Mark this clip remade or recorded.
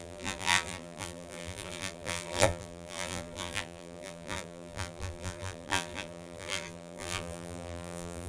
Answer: remade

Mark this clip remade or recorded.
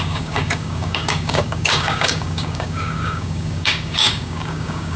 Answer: remade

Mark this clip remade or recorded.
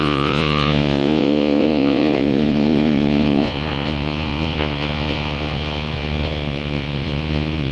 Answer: remade